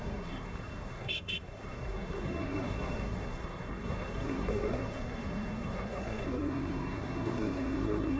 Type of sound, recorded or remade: remade